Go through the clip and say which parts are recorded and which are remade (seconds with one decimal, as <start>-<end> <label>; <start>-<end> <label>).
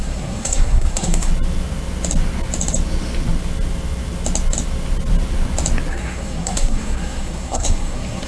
0.0-1.3 remade; 1.3-5.9 recorded; 5.9-8.3 remade